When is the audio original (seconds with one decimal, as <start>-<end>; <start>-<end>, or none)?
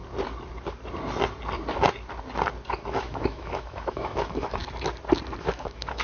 0.0-2.7; 4.6-5.4